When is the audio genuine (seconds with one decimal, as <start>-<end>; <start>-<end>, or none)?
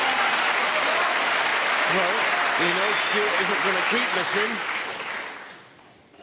0.0-6.2